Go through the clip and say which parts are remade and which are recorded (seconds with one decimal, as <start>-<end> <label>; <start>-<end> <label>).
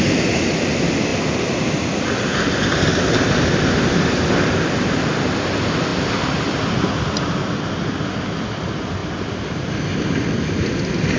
0.0-11.2 recorded